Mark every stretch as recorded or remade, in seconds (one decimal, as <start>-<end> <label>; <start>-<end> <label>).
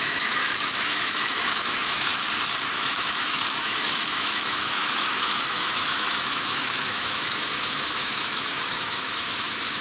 0.0-2.1 remade; 2.1-2.7 recorded; 2.7-9.8 remade